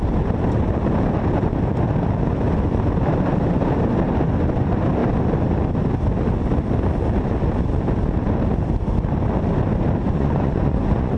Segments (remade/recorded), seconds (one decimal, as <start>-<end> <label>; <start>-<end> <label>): 0.0-10.0 recorded; 10.0-11.2 remade